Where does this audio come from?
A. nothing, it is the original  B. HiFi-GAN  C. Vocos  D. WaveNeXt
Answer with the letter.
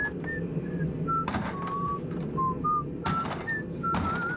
A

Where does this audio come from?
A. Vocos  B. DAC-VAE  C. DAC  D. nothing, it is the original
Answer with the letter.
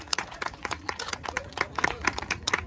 A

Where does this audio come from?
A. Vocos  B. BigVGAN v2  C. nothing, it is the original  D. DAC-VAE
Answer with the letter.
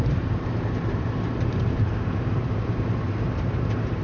B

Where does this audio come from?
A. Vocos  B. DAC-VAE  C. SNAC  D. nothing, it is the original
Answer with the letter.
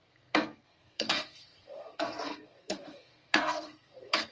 C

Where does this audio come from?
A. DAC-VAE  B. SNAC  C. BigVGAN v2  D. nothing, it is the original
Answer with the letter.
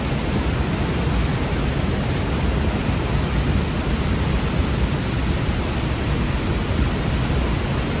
D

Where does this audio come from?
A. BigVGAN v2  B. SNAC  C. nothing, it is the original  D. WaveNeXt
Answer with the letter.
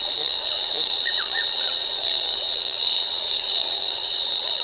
D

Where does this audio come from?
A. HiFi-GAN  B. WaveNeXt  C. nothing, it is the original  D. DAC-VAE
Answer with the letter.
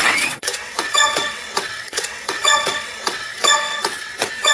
B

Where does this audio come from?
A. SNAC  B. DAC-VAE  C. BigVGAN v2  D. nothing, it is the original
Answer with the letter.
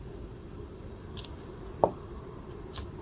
D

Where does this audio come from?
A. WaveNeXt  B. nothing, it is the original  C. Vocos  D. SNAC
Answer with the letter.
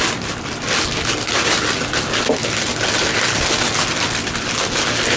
B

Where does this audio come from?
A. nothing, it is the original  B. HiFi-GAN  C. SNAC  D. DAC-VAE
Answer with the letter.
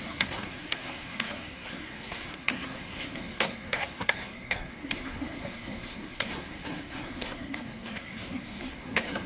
C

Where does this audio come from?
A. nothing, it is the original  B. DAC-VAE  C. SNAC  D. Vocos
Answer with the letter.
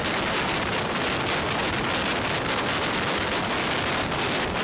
A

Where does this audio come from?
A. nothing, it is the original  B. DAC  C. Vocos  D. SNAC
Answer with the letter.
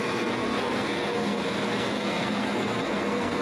D